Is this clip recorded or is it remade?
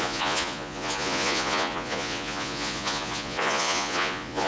remade